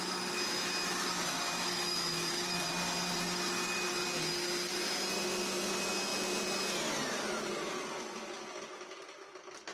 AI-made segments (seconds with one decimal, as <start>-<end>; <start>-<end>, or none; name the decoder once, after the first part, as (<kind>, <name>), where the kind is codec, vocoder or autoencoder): 0.8-2.6 (autoencoder, DAC-VAE)